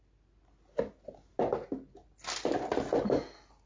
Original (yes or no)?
yes